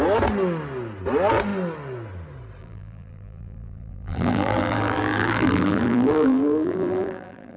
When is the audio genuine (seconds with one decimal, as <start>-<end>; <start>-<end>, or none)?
0.0-2.6